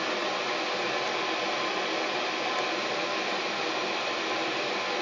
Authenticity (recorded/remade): recorded